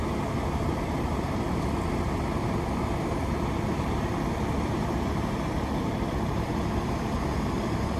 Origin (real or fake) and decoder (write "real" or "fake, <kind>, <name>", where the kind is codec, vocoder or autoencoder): real